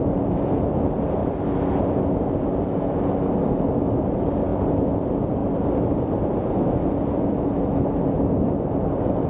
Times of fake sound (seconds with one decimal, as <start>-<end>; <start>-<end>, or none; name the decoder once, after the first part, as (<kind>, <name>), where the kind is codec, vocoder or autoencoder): 1.2-1.8 (vocoder, BigVGAN v2); 4.5-5.0